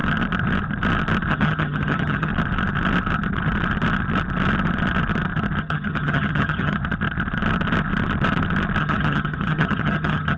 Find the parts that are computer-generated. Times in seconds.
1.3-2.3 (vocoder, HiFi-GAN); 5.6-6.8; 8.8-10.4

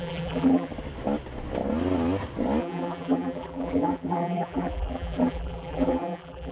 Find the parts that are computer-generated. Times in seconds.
0.0-0.7 (vocoder, BigVGAN v2); 2.6-6.5